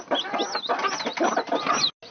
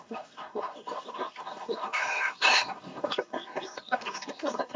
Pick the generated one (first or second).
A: second